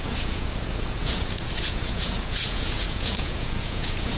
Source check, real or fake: fake